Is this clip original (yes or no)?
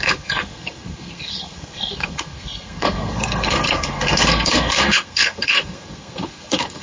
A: no